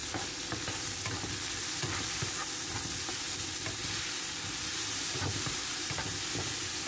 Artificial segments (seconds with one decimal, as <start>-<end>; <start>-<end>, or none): 4.7-6.0